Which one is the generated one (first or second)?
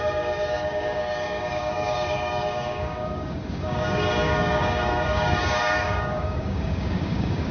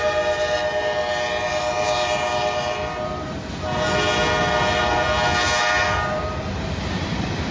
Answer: first